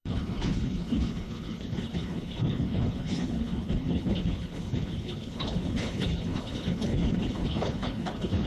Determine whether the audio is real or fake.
fake